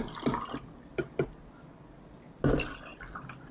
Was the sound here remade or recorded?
recorded